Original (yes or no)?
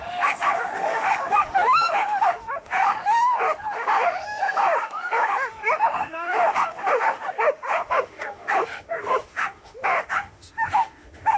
no